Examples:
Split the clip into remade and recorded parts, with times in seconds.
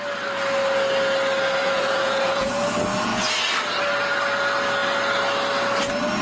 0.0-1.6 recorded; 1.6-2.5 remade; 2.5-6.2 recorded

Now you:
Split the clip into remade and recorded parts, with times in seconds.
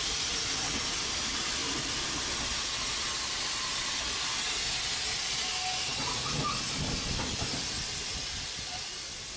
0.0-1.6 recorded; 1.6-2.3 remade; 2.3-9.4 recorded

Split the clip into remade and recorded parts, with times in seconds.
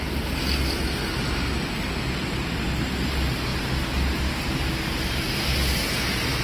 0.0-6.4 recorded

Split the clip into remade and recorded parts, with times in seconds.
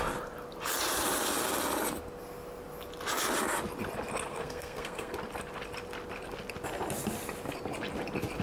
0.0-4.3 recorded; 4.3-5.1 remade; 5.1-8.4 recorded